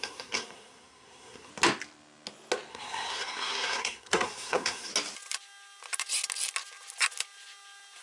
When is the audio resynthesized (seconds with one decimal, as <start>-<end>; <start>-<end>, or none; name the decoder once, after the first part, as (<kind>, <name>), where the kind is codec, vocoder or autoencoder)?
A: 0.0-1.5 (codec, SNAC); 2.7-4.9